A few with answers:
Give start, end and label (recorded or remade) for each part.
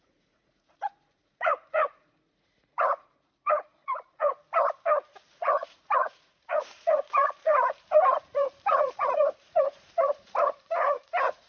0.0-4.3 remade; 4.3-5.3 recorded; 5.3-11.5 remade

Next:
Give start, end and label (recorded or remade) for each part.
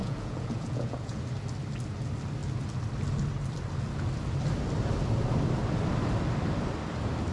0.0-1.2 remade; 1.2-7.3 recorded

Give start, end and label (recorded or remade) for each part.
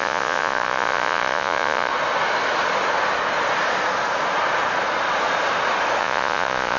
0.0-1.9 remade; 1.9-6.0 recorded; 6.0-6.8 remade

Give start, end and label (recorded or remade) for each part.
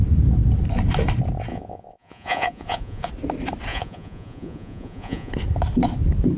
0.0-1.5 recorded; 1.5-3.1 remade; 3.1-3.7 recorded; 3.7-5.3 remade; 5.3-6.4 recorded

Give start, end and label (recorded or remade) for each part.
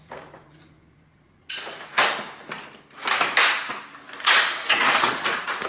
0.0-1.9 remade; 1.9-4.2 recorded; 4.2-5.7 remade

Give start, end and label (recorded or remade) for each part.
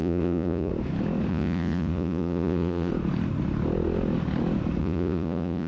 0.0-0.7 remade; 0.7-1.3 recorded; 1.3-2.9 remade; 2.9-4.8 recorded; 4.8-5.7 remade